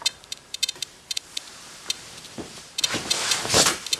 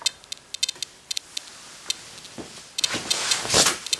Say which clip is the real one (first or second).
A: second